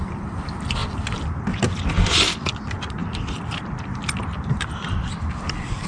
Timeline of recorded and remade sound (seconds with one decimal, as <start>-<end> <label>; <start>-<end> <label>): 0.0-5.9 recorded